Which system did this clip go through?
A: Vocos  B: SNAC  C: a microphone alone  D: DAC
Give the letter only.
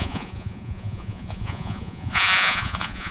A